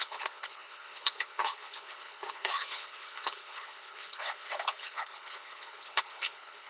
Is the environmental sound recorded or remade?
remade